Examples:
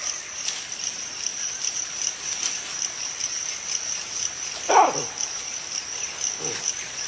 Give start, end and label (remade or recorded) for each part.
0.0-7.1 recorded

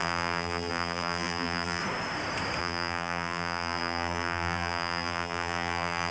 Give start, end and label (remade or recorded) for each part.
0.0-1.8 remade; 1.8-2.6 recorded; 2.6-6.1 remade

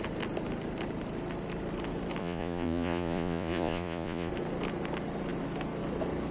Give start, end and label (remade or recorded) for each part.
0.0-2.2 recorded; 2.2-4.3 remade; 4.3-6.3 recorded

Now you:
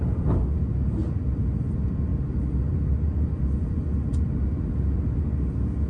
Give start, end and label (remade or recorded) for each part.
0.0-2.1 recorded; 2.1-4.7 remade; 4.7-5.9 recorded